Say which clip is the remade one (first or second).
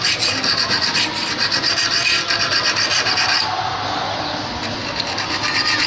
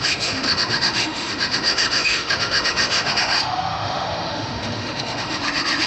second